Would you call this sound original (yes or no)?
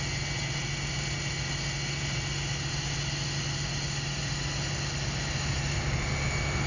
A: yes